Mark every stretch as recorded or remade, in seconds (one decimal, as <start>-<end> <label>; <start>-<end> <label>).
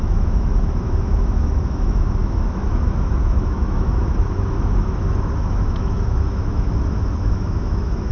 0.0-8.1 remade